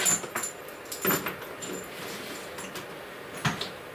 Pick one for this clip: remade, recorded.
recorded